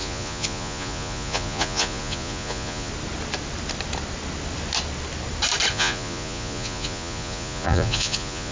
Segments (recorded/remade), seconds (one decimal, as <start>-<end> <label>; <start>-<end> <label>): 0.0-2.9 remade; 2.9-5.7 recorded; 5.7-8.5 remade